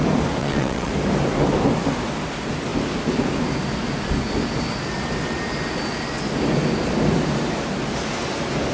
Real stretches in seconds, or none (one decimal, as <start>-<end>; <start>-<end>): 0.0-0.4; 0.9-8.7